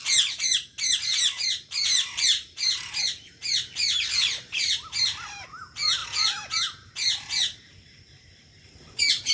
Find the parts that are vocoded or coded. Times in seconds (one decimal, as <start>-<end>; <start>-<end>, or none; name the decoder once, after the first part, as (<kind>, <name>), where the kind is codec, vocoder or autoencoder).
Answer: 0.0-6.0 (vocoder, BigVGAN v2); 6.6-9.3

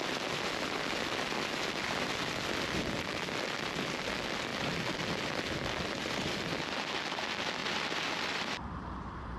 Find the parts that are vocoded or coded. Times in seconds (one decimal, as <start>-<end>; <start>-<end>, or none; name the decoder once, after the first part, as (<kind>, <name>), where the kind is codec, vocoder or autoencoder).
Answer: 7.6-9.4 (vocoder, BigVGAN v2)